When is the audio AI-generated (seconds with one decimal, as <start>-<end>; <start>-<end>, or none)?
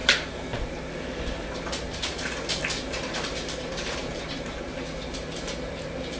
0.7-6.2